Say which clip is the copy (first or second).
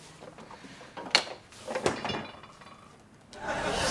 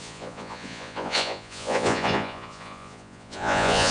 second